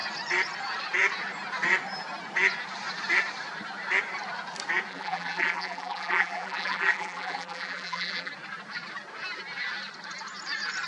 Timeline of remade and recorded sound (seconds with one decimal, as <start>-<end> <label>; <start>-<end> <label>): 0.0-4.9 recorded; 4.9-8.3 remade; 8.3-10.9 recorded